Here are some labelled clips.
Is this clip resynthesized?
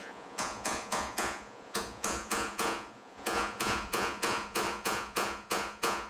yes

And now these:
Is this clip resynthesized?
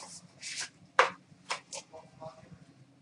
no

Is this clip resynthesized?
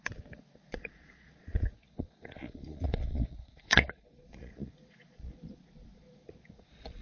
yes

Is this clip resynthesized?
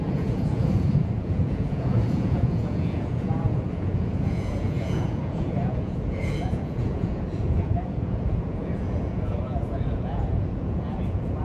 yes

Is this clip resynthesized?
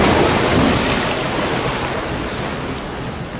no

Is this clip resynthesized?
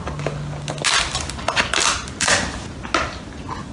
no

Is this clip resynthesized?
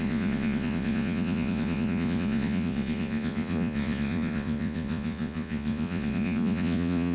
yes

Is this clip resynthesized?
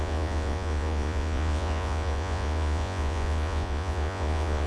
yes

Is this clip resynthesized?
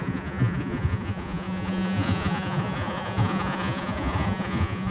yes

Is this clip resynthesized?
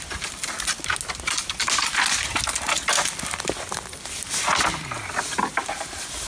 no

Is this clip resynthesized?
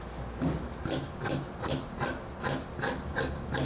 no